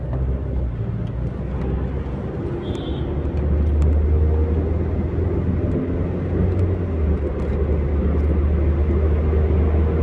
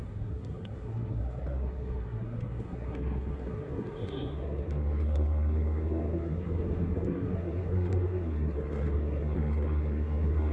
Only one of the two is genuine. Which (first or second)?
first